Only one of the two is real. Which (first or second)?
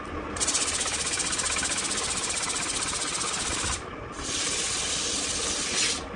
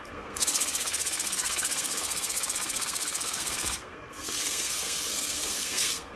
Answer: first